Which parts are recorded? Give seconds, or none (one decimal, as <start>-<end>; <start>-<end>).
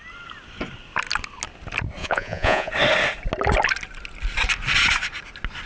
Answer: 0.0-2.0; 2.7-5.7